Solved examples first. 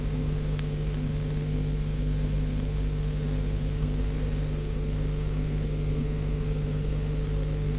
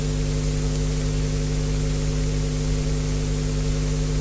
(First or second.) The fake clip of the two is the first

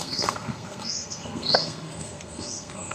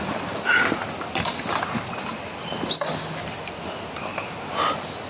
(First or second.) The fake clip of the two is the first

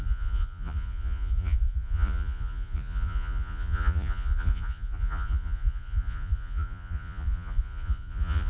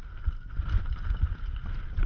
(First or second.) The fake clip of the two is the first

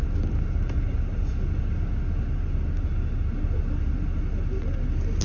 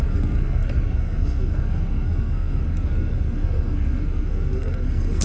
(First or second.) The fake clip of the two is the second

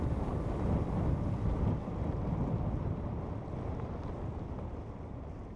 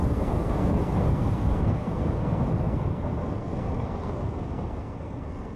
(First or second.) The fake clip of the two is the second